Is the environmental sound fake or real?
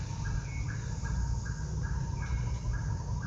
real